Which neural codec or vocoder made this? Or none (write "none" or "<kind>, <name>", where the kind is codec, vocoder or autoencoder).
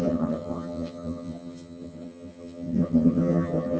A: vocoder, HiFi-GAN